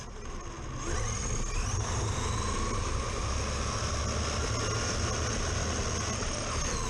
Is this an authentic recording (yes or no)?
yes